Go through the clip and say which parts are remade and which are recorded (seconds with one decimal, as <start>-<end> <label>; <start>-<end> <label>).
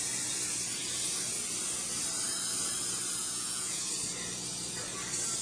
0.0-3.2 recorded; 3.2-3.9 remade; 3.9-5.4 recorded